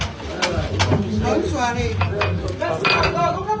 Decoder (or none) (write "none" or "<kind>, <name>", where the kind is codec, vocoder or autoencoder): none